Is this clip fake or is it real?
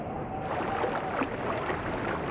real